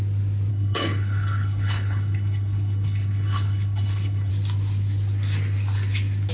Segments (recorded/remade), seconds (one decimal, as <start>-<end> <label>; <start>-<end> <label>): 0.0-0.5 recorded; 0.5-4.3 remade; 4.3-6.3 recorded